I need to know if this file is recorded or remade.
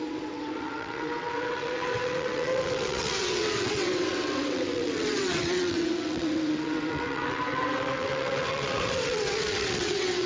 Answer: remade